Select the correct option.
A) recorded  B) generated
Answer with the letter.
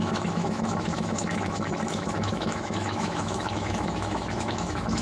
B